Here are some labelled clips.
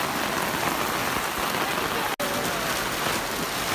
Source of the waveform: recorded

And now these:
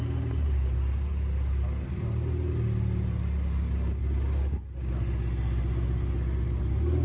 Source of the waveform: recorded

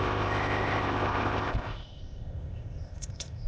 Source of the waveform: remade